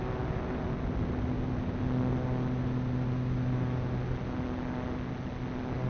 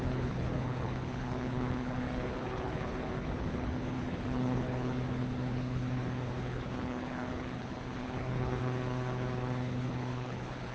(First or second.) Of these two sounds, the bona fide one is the first